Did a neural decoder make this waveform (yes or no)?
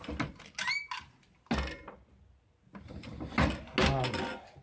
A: no